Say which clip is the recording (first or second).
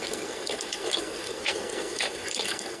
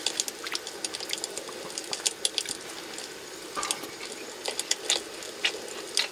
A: second